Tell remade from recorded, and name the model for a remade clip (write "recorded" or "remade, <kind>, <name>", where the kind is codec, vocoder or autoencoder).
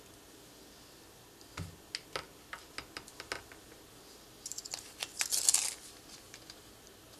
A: recorded